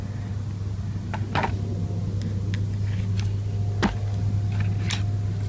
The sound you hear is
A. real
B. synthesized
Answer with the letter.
A